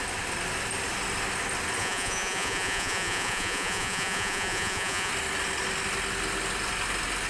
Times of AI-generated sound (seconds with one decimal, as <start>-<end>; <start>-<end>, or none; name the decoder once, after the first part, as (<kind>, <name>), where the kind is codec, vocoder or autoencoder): 1.8-5.1 (vocoder, Vocos)